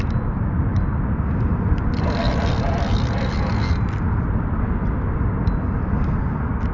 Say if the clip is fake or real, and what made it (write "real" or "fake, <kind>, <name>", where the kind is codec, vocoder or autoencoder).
real